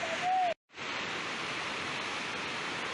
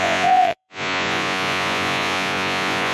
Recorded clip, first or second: first